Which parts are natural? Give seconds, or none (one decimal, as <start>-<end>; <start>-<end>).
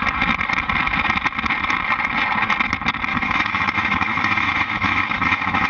0.0-3.1